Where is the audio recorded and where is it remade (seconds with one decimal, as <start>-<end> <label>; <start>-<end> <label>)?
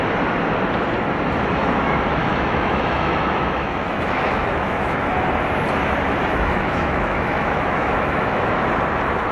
0.0-2.2 recorded; 2.2-5.1 remade; 5.1-6.2 recorded; 6.2-8.6 remade; 8.6-9.3 recorded